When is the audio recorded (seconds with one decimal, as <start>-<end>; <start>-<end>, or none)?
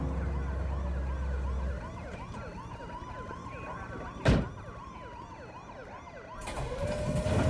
0.0-7.5